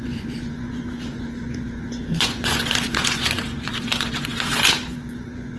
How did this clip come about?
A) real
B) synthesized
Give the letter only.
B